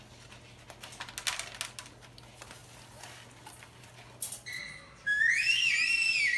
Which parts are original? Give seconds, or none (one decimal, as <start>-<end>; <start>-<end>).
0.0-5.1; 5.7-6.4